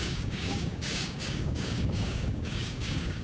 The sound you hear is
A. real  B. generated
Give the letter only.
B